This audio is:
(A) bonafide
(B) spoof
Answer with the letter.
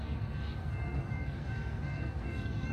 B